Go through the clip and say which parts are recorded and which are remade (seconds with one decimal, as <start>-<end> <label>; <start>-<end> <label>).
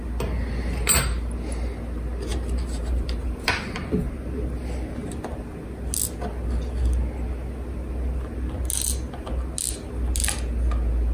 0.0-2.3 recorded; 2.3-3.6 remade; 3.6-11.1 recorded